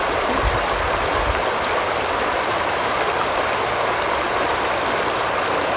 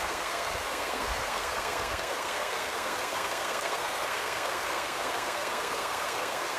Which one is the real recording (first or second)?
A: first